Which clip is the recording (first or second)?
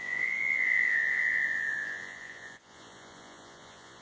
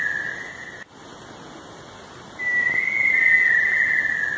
second